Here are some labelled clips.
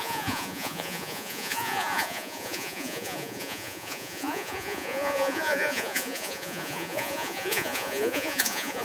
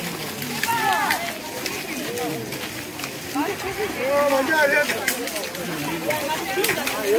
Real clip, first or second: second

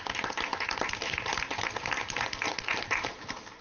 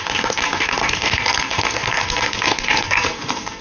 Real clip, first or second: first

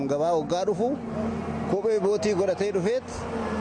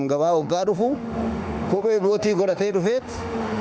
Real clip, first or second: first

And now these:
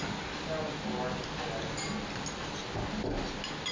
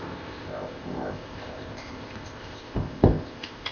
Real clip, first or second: first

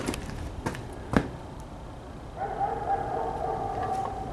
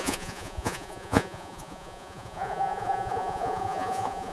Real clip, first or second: first